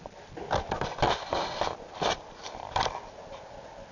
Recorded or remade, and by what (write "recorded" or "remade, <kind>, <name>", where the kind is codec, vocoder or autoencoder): recorded